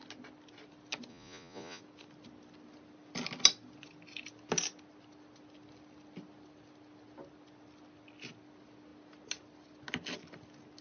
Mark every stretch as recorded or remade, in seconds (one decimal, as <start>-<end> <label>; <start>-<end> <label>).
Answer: 0.0-1.1 recorded; 1.1-1.8 remade; 1.8-10.8 recorded